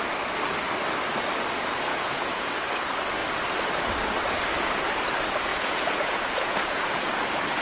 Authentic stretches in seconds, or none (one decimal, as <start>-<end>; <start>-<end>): 0.0-1.9; 2.5-5.5; 7.1-7.6